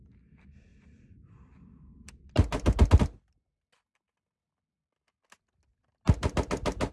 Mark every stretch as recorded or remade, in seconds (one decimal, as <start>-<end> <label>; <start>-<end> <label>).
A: 0.0-6.9 recorded